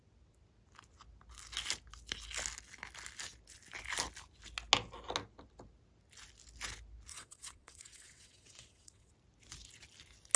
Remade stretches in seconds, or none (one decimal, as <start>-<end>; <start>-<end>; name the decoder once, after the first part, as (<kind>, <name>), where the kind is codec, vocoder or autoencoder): 7.1-9.1 (vocoder, WaveNeXt)